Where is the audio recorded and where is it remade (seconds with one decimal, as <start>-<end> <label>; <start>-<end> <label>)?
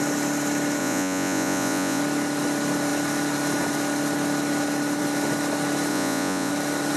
0.0-0.8 recorded; 0.8-2.0 remade; 2.0-5.9 recorded; 5.9-6.5 remade; 6.5-7.0 recorded